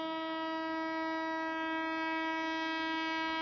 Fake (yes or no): no